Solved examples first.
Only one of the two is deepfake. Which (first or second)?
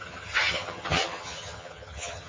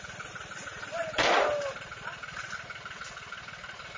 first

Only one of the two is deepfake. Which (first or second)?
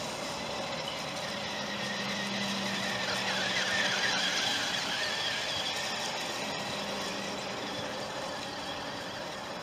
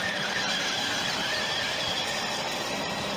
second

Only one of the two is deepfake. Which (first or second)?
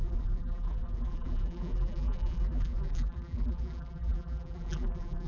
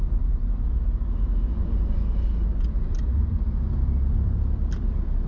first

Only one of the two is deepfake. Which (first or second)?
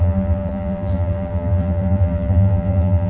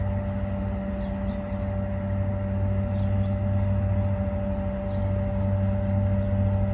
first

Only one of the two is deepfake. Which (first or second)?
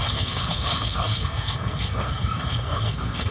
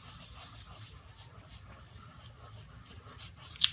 first